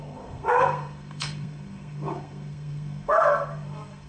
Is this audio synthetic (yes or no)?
yes